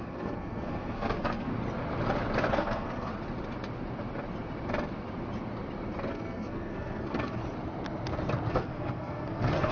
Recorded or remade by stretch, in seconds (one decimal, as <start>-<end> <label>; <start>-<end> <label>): 0.0-1.5 remade; 1.5-2.5 recorded; 2.5-3.1 remade; 3.1-6.1 recorded; 6.1-7.4 remade; 7.4-8.5 recorded; 8.5-9.7 remade